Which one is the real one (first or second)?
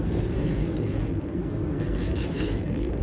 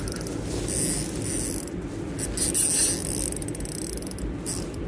second